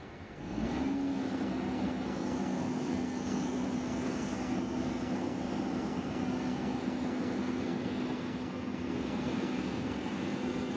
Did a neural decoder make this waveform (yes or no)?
yes